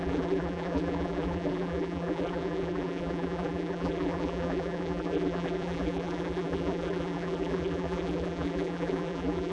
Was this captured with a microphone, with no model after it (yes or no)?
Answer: no